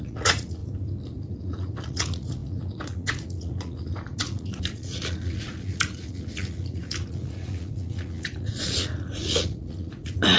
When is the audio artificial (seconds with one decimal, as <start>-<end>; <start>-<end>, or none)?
0.0-0.6; 1.3-10.4